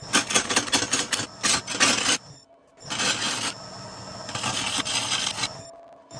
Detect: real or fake real